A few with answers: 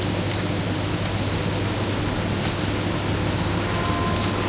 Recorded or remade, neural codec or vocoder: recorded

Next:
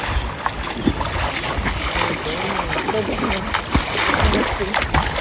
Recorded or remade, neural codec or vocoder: recorded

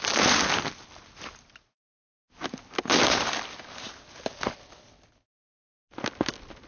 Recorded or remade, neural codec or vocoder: recorded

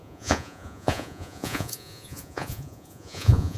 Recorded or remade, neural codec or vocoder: remade, vocoder, Vocos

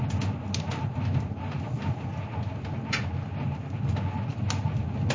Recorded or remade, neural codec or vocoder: recorded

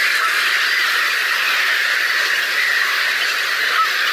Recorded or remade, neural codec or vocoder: recorded